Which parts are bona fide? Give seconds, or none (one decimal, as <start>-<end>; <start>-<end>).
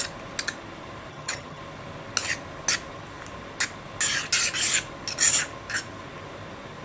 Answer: 0.0-1.1; 1.6-6.8